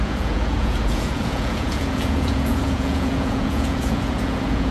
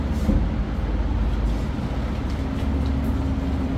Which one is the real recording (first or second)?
second